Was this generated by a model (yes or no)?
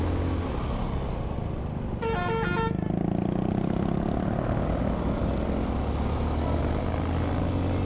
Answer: no